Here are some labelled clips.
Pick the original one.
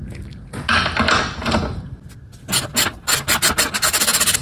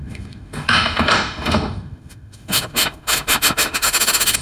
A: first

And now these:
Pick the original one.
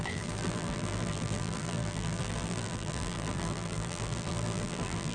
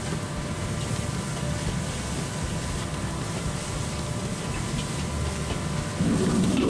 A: second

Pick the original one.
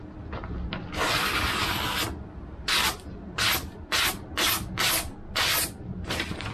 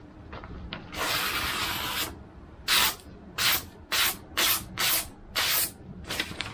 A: first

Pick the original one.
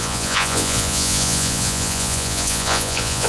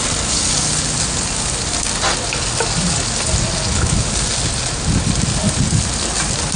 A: second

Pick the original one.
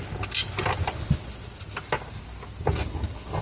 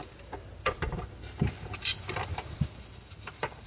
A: first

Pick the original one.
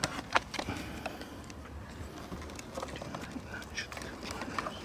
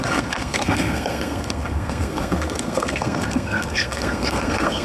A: first